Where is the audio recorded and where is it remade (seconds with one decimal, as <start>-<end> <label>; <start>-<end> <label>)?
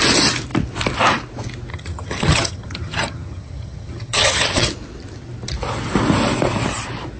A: 0.0-1.7 recorded; 1.7-4.7 remade; 4.7-7.2 recorded